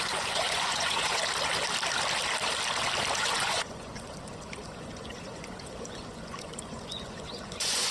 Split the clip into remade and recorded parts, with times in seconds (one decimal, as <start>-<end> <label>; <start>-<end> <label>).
0.0-1.2 remade; 1.2-3.1 recorded; 3.1-7.9 remade